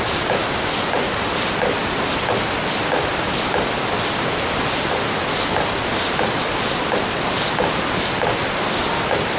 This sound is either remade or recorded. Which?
recorded